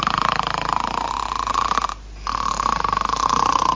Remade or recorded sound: recorded